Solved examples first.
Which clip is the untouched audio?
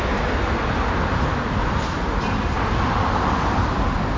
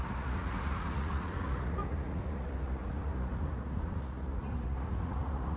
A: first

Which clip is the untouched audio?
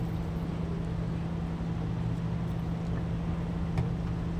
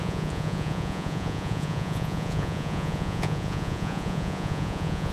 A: first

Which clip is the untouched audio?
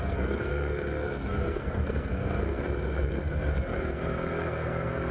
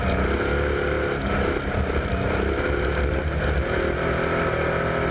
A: second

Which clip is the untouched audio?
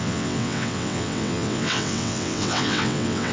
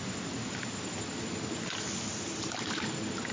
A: second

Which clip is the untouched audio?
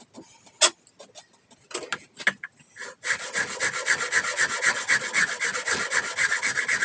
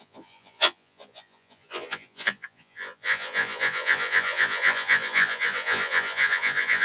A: first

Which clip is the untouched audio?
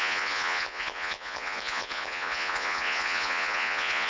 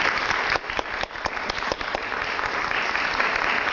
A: second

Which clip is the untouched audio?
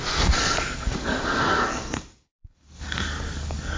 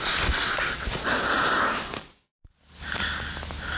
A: second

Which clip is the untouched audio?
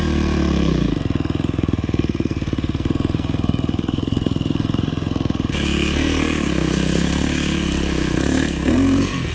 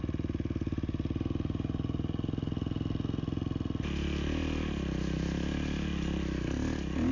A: second